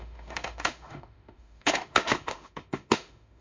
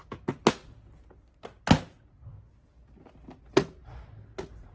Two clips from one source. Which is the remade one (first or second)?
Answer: first